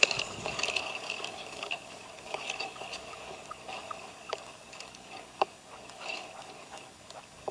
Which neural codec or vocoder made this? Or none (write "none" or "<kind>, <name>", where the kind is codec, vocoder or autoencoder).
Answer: codec, DAC